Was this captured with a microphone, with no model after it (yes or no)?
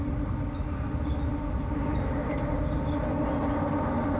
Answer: yes